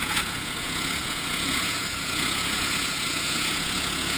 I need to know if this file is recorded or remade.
remade